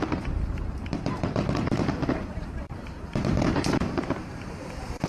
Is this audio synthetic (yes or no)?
yes